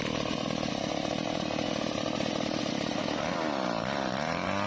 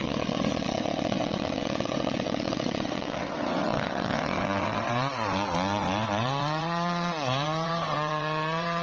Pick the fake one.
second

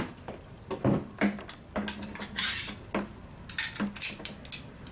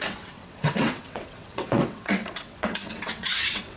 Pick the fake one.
second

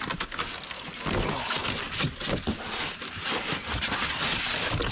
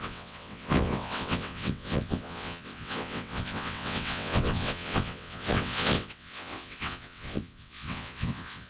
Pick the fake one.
second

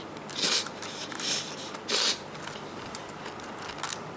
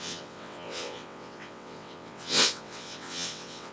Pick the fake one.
second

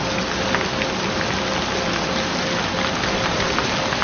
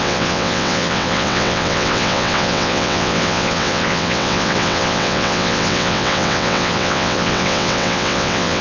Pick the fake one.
second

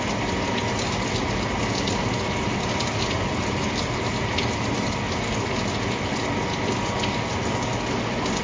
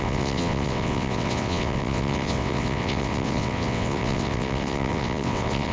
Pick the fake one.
second